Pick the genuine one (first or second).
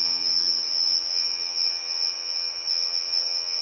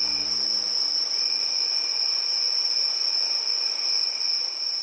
second